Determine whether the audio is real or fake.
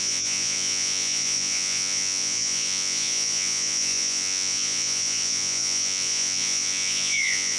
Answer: fake